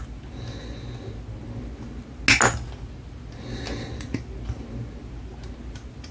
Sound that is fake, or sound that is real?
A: real